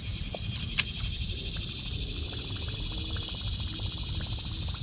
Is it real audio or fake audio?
real